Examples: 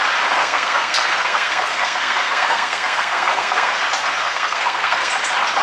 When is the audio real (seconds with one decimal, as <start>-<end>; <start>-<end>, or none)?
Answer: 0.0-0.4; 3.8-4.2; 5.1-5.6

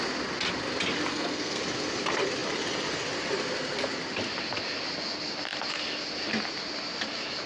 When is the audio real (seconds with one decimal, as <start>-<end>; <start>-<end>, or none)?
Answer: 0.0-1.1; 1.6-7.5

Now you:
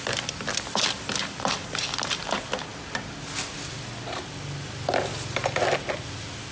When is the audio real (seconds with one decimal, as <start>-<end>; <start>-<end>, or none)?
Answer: 0.0-6.5

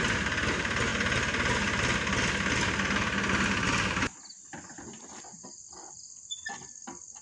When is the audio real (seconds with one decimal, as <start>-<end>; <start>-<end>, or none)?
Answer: 0.0-7.2

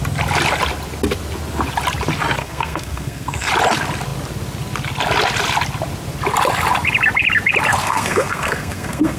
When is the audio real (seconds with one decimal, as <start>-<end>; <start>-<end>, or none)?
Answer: 0.0-2.4; 3.5-7.8

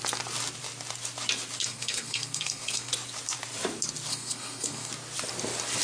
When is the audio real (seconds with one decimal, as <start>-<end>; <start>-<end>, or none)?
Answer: 0.0-1.6; 2.9-4.1; 4.9-5.8

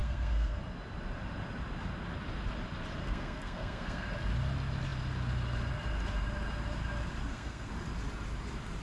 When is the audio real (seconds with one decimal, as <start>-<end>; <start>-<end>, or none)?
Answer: 0.6-3.0; 4.1-7.2; 7.7-8.8